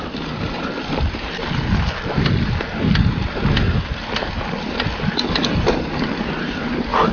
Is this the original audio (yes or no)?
yes